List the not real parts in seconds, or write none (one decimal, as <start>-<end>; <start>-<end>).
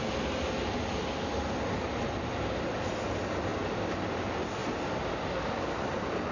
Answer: none